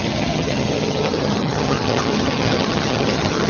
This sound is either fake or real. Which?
fake